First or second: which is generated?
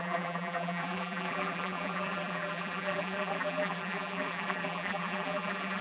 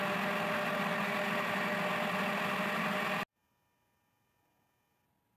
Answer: first